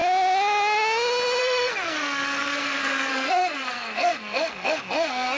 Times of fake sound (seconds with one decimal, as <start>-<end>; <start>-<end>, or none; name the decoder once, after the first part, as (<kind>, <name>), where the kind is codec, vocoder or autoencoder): 1.4-5.4 (codec, SNAC)

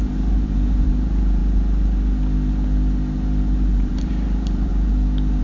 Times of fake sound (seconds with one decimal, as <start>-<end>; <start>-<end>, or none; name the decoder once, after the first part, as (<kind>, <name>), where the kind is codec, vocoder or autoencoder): 0.0-1.4 (vocoder, BigVGAN v2); 3.7-4.7